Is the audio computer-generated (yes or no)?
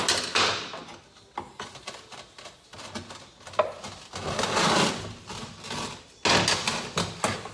no